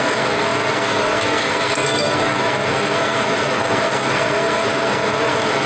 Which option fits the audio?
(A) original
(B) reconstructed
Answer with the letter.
B